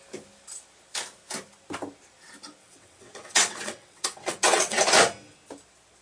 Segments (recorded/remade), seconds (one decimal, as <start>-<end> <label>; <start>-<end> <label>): 0.0-2.6 recorded; 2.6-4.8 remade; 4.8-6.0 recorded